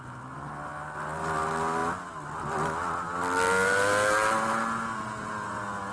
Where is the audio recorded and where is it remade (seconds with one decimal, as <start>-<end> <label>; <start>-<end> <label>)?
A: 0.0-5.9 recorded